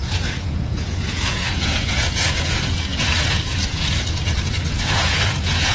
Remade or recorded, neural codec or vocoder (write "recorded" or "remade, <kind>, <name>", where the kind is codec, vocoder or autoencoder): remade, vocoder, Vocos